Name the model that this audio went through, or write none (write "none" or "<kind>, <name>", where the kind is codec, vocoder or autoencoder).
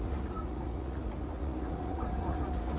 vocoder, Vocos